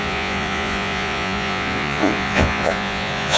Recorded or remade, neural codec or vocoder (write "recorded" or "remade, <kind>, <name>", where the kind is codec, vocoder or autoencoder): remade, vocoder, Vocos